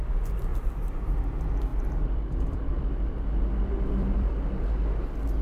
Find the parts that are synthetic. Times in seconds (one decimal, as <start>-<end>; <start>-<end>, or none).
0.5-1.2; 1.7-4.3